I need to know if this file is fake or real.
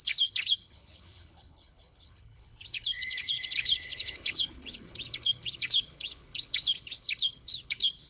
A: fake